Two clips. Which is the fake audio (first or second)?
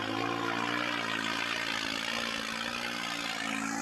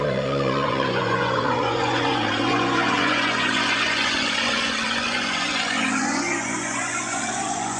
second